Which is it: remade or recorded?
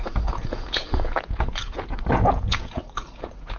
remade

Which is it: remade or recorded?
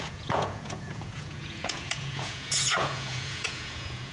remade